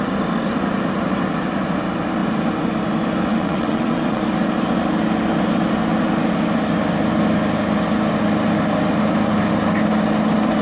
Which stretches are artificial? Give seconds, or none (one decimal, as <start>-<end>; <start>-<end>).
3.3-4.2